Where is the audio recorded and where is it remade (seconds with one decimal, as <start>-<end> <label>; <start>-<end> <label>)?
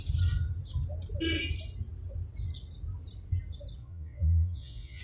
0.0-3.8 recorded; 3.8-5.0 remade